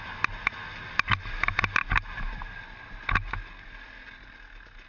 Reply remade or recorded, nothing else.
recorded